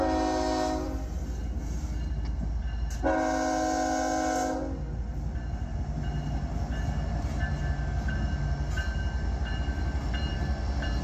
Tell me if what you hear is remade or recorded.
recorded